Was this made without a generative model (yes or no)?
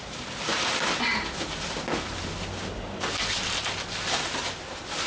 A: yes